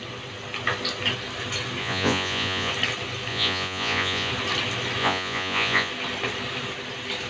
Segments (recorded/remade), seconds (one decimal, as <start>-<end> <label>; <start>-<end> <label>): 0.0-1.8 recorded; 1.8-2.7 remade; 2.7-3.3 recorded; 3.3-4.3 remade; 4.3-5.0 recorded; 5.0-5.9 remade; 5.9-7.3 recorded